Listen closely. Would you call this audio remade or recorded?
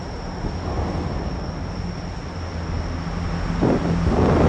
recorded